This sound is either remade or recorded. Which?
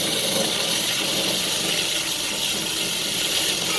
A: recorded